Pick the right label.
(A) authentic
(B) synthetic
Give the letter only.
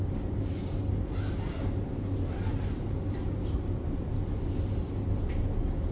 A